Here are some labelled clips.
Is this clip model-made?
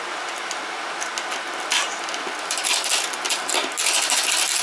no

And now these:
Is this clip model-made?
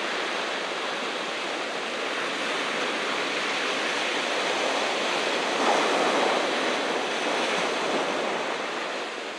no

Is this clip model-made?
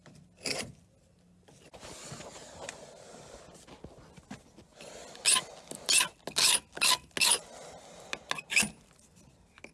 no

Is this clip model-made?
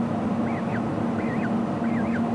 no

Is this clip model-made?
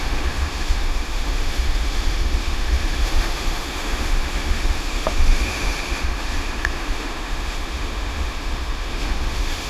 yes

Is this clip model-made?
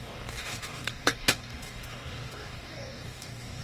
yes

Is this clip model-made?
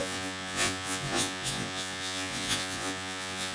yes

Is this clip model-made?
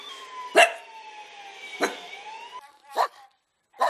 no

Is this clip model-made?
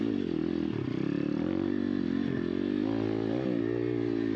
no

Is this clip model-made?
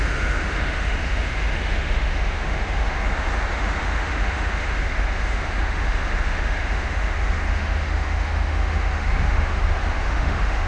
yes